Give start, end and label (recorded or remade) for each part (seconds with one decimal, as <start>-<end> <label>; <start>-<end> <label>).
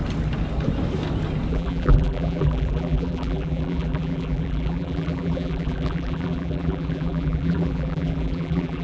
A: 0.0-1.5 recorded; 1.5-8.8 remade